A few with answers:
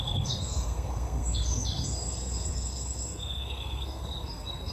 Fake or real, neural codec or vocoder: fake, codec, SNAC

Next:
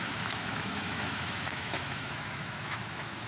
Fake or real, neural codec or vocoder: fake, autoencoder, DAC-VAE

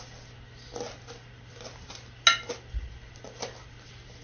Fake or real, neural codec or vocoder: real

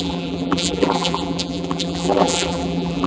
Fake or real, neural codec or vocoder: fake, vocoder, BigVGAN v2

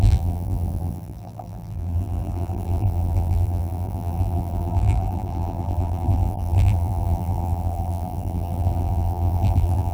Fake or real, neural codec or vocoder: fake, vocoder, BigVGAN v2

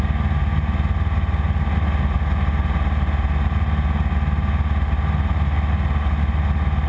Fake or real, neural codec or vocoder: real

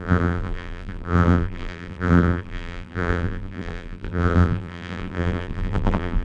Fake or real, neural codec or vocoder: fake, vocoder, BigVGAN v2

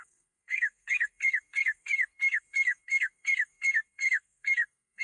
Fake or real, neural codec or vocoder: fake, codec, SNAC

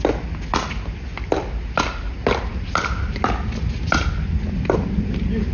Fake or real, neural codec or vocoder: real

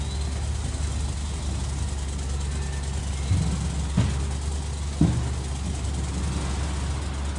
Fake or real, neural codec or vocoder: real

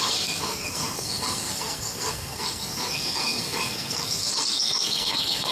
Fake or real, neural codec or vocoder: fake, codec, SNAC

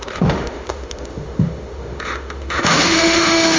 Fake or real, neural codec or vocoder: fake, autoencoder, DAC-VAE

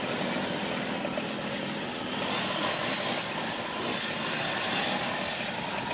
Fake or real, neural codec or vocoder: fake, vocoder, BigVGAN v2